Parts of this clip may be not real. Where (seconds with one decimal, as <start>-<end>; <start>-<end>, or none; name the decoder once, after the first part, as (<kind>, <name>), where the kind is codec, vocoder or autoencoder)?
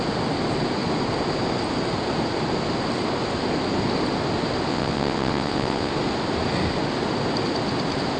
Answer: 4.7-5.9 (vocoder, WaveNeXt)